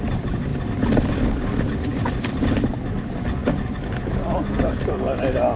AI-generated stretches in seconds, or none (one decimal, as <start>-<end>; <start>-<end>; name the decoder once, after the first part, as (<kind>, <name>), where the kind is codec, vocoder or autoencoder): none